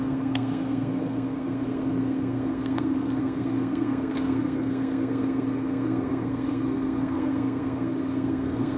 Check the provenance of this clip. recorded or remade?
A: remade